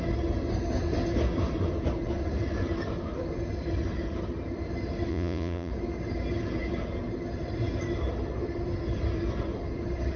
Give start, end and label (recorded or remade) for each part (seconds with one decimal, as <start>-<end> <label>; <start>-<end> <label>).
0.0-5.1 recorded; 5.1-5.7 remade; 5.7-10.2 recorded